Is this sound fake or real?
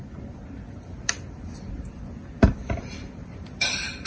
fake